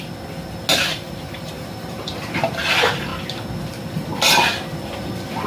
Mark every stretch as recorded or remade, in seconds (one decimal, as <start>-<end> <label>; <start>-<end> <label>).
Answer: 0.0-0.9 recorded; 0.9-2.1 remade; 2.1-5.5 recorded